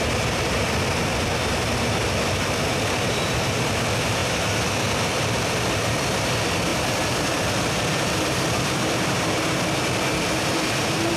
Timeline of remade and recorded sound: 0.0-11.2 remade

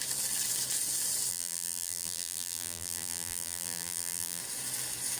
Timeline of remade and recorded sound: 0.0-1.3 recorded; 1.3-4.4 remade; 4.4-5.2 recorded